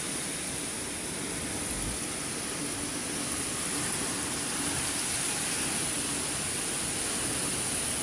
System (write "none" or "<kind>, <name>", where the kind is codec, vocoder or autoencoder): none